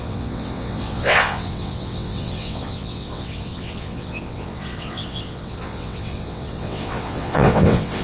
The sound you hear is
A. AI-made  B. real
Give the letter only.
A